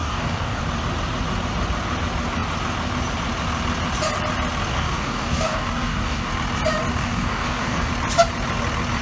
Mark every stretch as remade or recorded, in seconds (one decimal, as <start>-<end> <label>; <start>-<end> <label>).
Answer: 0.0-0.6 remade; 0.6-4.7 recorded; 4.7-6.3 remade; 6.3-6.9 recorded; 6.9-7.9 remade; 7.9-9.0 recorded